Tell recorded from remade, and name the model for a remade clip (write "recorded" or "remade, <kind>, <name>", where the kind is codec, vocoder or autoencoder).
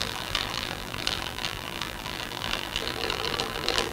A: remade, vocoder, BigVGAN v2